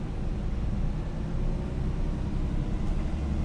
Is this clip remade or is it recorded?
recorded